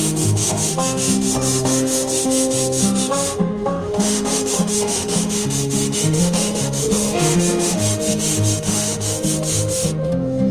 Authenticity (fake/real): fake